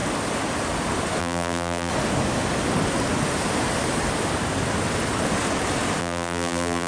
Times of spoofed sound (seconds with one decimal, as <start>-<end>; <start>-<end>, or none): 1.2-1.9; 6.0-6.9